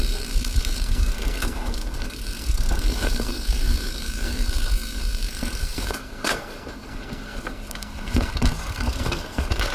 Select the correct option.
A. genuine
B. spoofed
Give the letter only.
B